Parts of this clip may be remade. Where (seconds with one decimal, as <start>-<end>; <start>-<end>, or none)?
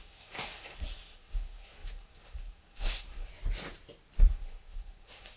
0.0-3.3; 4.3-5.4